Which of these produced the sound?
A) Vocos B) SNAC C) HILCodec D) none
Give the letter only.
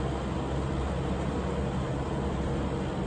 D